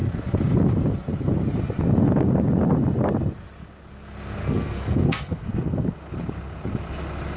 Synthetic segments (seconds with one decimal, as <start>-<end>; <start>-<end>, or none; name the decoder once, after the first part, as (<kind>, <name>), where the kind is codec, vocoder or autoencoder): 4.4-5.9 (codec, SNAC)